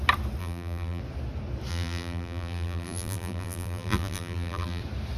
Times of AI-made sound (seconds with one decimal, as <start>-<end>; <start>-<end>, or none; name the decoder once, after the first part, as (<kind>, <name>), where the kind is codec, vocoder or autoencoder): 0.4-1.0 (vocoder, BigVGAN v2); 1.7-4.8